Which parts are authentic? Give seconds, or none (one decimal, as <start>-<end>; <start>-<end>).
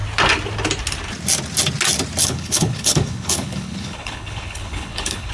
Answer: 0.0-2.2